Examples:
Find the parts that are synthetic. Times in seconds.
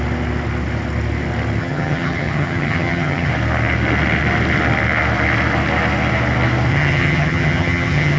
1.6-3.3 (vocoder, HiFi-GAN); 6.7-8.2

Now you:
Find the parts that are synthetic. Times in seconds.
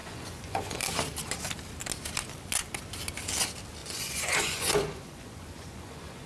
0.0-0.8 (vocoder, Vocos); 3.8-6.3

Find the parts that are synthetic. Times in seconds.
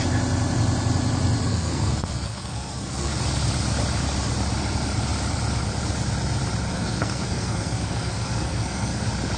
1.5-3.2 (codec, SNAC); 6.7-9.0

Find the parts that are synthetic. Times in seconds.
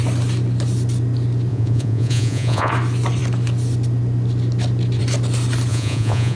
1.5-2.7 (vocoder, Vocos); 5.7-6.4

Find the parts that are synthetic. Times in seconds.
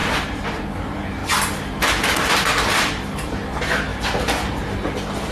0.0-0.6 (vocoder, BigVGAN v2); 3.9-4.5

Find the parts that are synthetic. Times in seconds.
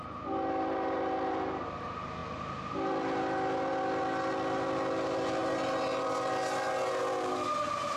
none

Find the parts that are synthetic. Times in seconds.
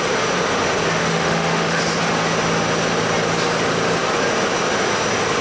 1.0-1.8 (autoencoder, DAC-VAE)